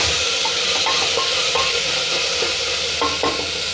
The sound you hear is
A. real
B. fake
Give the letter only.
A